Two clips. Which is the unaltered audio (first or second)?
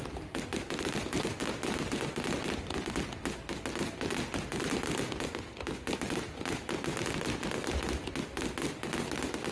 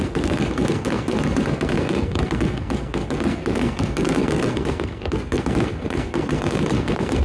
first